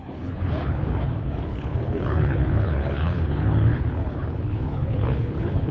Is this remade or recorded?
remade